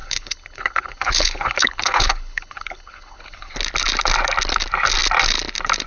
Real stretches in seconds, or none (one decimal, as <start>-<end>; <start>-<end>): 3.5-5.9